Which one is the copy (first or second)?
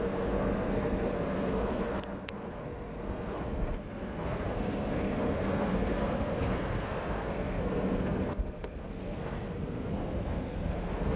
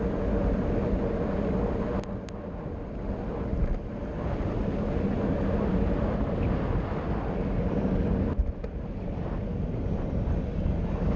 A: first